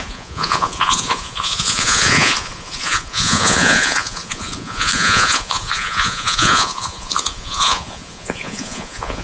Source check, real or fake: fake